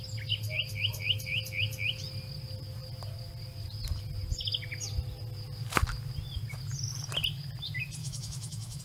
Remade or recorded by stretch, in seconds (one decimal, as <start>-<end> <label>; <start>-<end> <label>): 0.0-8.0 recorded; 8.0-8.8 remade